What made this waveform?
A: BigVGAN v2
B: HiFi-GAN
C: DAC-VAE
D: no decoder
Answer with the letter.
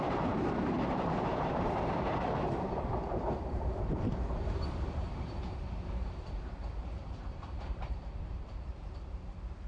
A